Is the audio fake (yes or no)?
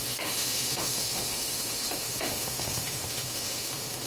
yes